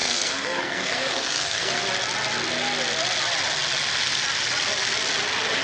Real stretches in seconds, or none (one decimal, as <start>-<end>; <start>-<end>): 1.8-5.6